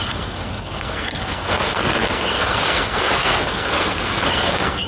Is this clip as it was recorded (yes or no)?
no